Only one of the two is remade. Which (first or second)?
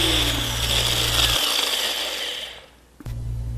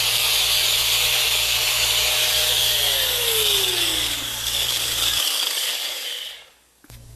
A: second